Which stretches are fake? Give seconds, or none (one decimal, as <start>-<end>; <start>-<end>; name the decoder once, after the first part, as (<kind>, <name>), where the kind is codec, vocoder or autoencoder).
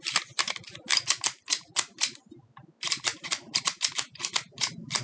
none